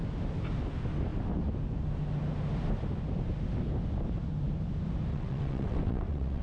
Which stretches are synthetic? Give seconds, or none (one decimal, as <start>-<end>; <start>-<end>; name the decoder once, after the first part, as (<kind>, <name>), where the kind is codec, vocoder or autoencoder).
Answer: 5.1-6.4 (vocoder, WaveNeXt)